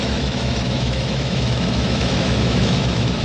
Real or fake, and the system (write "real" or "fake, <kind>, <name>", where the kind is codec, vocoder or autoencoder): fake, autoencoder, DAC-VAE